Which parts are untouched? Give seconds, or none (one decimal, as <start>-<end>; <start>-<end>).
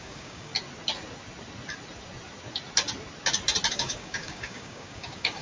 0.5-3.7